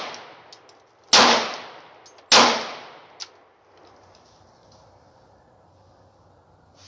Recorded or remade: recorded